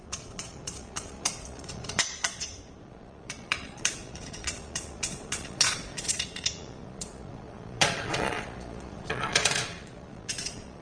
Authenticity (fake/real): fake